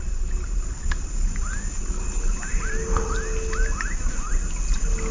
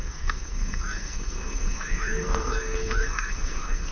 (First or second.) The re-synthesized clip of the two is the second